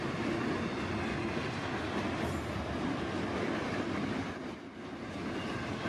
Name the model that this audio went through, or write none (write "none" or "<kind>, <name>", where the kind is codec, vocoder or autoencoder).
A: none